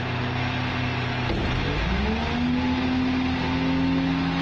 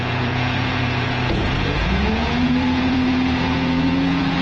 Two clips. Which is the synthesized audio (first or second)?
second